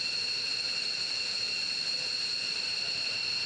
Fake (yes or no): yes